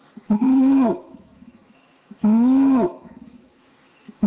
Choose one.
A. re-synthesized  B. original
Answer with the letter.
A